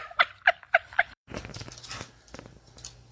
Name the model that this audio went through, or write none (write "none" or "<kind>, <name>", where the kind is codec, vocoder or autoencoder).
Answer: vocoder, BigVGAN v2